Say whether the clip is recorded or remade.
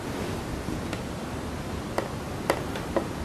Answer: recorded